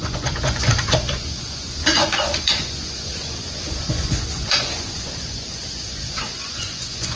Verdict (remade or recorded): remade